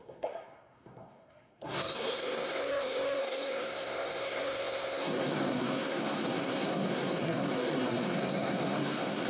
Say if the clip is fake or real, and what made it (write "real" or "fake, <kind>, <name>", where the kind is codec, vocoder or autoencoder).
fake, codec, SNAC